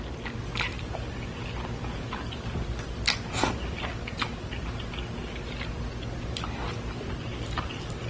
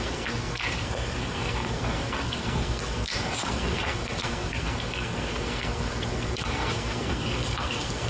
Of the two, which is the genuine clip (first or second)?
first